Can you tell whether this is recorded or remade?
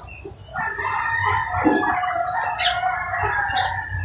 recorded